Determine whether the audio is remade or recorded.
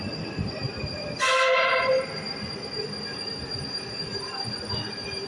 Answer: recorded